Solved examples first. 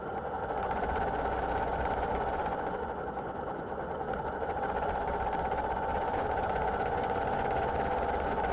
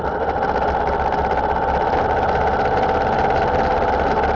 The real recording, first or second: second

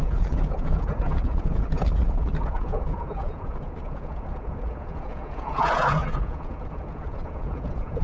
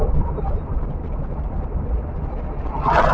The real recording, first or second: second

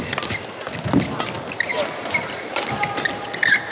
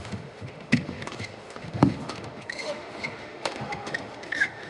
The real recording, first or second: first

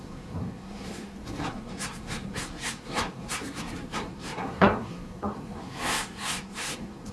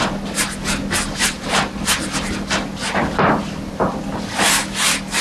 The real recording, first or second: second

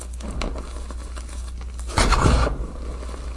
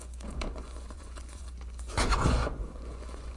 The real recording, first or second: first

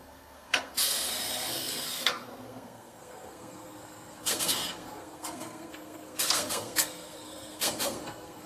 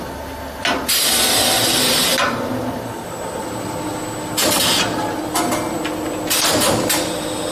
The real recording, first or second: second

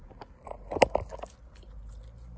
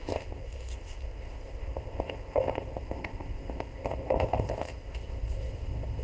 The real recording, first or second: first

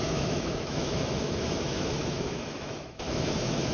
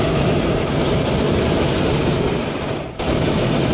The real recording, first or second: second